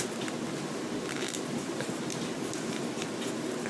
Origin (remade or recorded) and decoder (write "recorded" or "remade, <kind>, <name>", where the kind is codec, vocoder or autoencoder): recorded